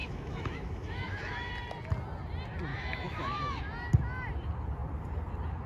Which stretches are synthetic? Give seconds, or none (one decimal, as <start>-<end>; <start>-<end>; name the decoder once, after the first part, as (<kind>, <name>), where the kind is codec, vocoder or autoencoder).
0.0-1.5 (autoencoder, DAC-VAE); 2.7-3.6